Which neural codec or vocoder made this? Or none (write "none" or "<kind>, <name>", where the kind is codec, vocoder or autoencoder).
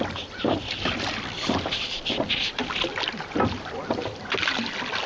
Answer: none